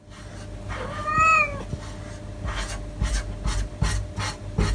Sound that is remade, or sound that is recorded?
recorded